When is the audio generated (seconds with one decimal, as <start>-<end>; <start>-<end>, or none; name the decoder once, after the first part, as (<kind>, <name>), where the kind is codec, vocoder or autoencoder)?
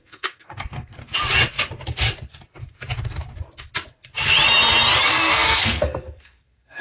0.0-1.0 (codec, SNAC); 5.1-6.8